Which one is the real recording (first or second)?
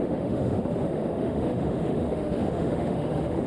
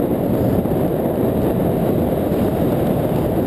second